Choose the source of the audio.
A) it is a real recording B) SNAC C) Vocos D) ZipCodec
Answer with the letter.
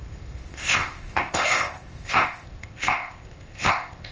D